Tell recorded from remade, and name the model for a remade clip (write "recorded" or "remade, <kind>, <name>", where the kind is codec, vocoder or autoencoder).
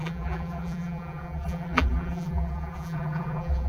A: remade, vocoder, BigVGAN v2